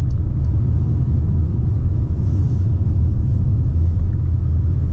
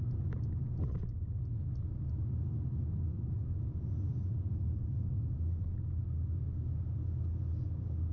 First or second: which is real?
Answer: second